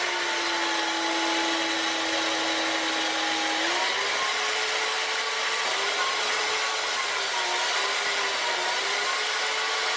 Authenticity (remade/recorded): recorded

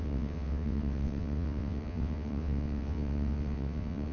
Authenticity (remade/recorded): remade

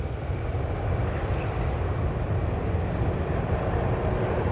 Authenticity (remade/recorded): recorded